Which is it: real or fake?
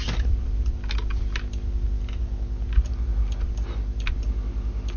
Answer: real